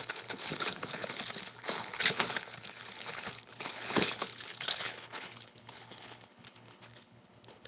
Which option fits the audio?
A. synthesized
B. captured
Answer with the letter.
A